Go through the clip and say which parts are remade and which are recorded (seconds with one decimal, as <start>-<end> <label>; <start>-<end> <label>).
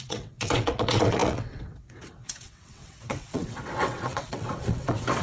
0.0-5.2 remade